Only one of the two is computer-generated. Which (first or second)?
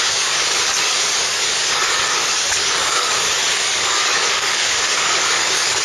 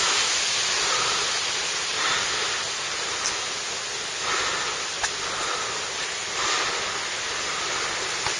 first